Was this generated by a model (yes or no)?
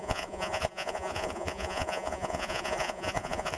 yes